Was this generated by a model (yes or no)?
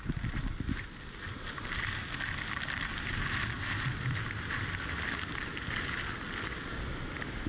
no